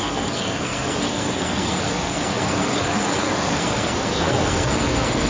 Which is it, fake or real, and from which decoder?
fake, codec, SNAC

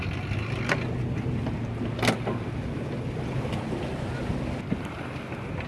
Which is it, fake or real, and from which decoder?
real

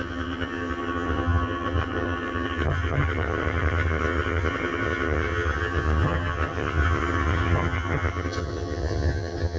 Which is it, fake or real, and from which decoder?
fake, vocoder, HiFi-GAN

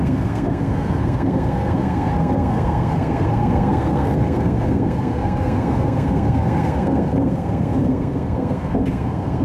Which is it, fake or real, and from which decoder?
fake, codec, SNAC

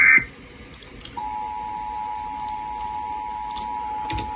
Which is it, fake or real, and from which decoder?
real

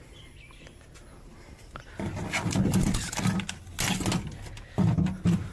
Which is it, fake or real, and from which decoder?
real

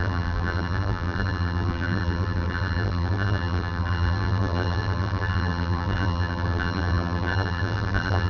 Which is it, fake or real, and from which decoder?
fake, vocoder, BigVGAN v2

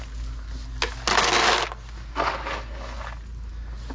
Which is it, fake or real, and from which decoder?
real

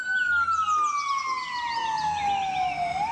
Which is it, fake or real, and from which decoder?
real